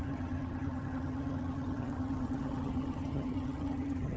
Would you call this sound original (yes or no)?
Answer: no